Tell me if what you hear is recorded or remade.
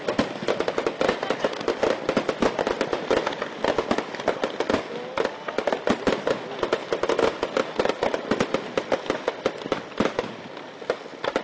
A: recorded